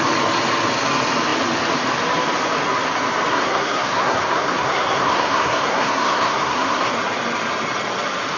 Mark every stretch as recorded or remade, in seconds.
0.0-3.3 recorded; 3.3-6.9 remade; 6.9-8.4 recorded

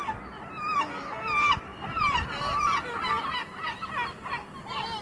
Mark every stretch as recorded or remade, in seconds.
0.0-1.7 recorded; 1.7-3.7 remade; 3.7-5.0 recorded

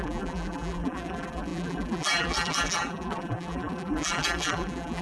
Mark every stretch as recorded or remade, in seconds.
0.0-5.0 remade

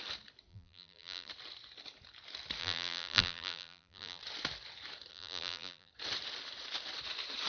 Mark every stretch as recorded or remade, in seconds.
0.0-0.5 recorded; 0.5-1.3 remade; 1.3-2.6 recorded; 2.6-4.2 remade; 4.2-5.1 recorded; 5.1-5.9 remade; 5.9-7.5 recorded

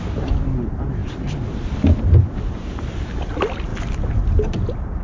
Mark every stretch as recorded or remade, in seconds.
0.0-5.0 recorded

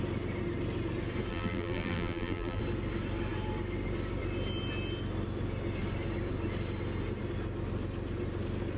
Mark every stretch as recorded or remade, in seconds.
0.0-1.3 recorded; 1.3-2.6 remade; 2.6-8.8 recorded

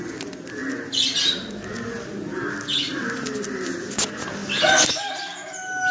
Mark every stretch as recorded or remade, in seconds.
0.0-5.9 recorded